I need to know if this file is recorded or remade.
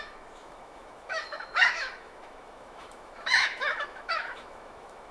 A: remade